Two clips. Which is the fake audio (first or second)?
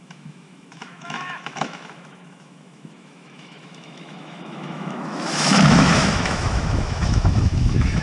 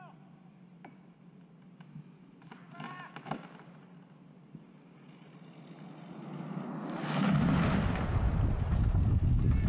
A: first